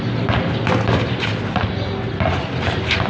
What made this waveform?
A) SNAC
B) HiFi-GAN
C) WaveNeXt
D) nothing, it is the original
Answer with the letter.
D